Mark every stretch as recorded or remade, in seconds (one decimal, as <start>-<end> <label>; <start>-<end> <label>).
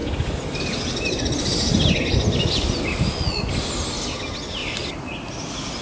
0.0-5.8 recorded